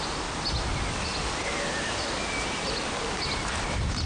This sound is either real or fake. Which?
real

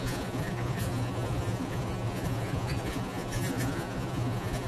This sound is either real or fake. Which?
fake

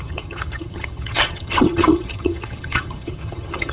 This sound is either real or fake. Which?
fake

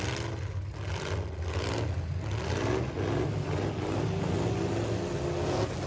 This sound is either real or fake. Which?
real